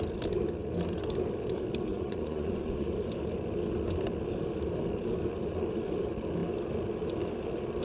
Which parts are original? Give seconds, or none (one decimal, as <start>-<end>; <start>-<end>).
0.0-1.9; 2.9-7.8